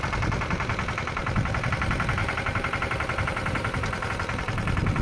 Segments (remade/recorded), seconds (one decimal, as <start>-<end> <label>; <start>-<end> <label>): 0.0-1.2 recorded; 1.2-1.7 remade; 1.7-2.2 recorded; 2.2-4.1 remade; 4.1-5.0 recorded